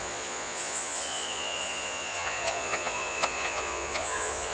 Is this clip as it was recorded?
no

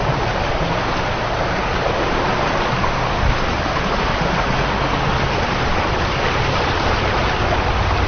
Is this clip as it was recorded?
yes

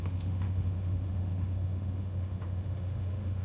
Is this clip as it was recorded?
no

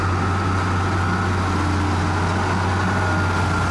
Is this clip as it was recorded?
yes